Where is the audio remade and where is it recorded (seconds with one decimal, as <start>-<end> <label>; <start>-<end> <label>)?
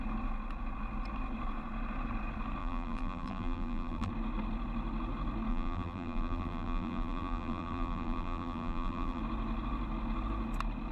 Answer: 0.0-2.6 recorded; 2.6-4.1 remade; 4.1-5.5 recorded; 5.5-9.2 remade; 9.2-10.9 recorded